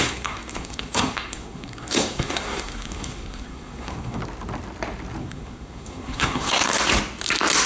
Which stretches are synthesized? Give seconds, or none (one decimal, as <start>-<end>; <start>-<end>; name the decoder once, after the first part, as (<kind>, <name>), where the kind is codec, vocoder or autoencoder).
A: 0.0-4.2 (codec, SNAC); 5.2-6.7

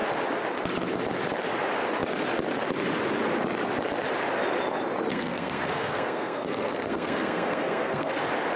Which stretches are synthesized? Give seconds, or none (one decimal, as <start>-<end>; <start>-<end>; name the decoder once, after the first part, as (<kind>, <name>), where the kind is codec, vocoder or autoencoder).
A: 5.1-8.2 (codec, SNAC)

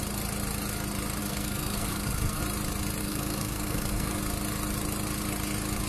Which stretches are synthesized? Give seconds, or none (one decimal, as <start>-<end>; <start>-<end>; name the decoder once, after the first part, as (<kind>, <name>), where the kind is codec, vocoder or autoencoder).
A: 1.2-2.4 (codec, SNAC); 3.0-4.2

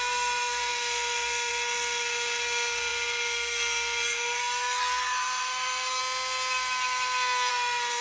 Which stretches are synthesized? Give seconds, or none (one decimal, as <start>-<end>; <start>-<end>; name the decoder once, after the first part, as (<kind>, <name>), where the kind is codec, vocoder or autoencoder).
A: 0.0-6.0 (codec, SNAC); 7.5-8.0

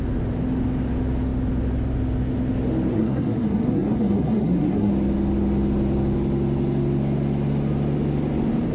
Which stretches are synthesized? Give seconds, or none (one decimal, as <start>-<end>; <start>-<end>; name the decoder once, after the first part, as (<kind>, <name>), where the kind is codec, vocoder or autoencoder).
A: 2.9-4.9 (codec, SNAC)